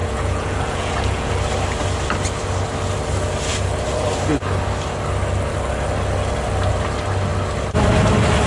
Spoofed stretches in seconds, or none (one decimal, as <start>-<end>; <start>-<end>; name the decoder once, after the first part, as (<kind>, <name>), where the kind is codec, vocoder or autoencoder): 0.0-1.3 (vocoder, Vocos)